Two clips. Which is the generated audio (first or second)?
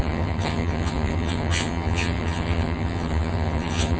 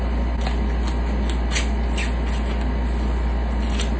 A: first